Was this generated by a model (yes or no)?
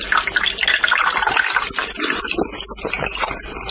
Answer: no